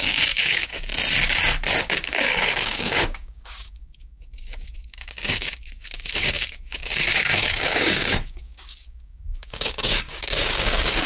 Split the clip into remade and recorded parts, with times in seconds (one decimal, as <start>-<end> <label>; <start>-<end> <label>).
0.0-0.9 remade; 0.9-1.8 recorded; 1.8-11.1 remade